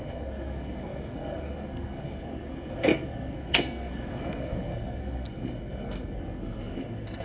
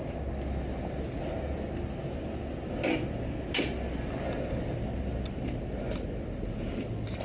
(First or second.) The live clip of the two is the second